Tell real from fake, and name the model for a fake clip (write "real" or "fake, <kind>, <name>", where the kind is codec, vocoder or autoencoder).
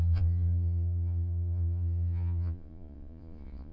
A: fake, vocoder, Vocos